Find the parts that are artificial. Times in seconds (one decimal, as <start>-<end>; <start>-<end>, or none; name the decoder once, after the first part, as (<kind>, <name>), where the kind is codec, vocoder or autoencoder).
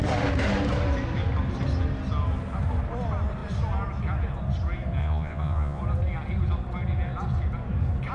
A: 5.0-5.8 (vocoder, Vocos)